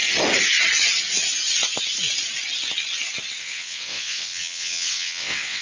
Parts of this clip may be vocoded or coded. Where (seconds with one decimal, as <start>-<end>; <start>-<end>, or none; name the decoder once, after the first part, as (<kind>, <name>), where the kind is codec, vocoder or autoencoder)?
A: 3.4-5.6 (vocoder, WaveNeXt)